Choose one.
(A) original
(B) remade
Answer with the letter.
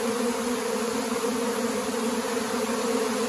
A